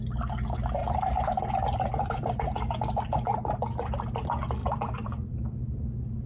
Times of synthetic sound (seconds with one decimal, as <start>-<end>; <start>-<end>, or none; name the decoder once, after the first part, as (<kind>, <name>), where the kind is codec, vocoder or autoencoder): 4.6-5.3 (vocoder, BigVGAN v2)